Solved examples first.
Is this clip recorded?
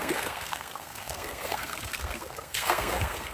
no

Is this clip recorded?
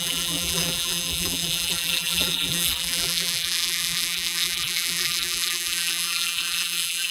no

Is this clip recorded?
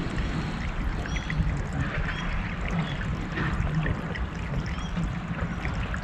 yes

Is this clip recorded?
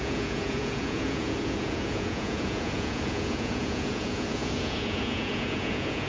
no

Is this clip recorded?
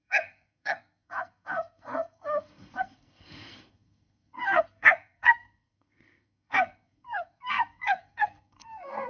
no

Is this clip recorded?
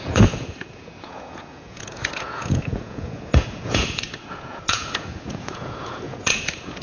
no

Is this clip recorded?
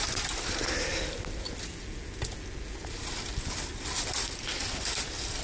yes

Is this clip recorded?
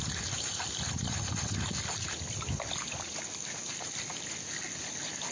yes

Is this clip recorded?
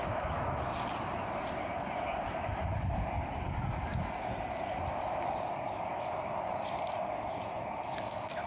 yes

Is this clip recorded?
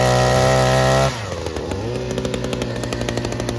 yes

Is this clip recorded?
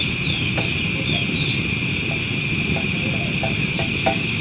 yes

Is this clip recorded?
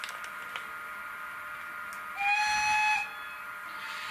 yes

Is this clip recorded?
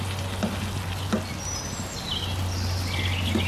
yes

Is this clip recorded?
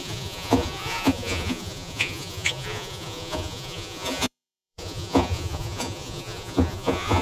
no